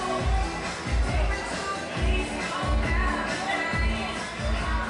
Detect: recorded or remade recorded